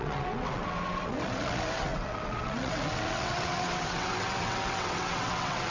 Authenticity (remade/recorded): remade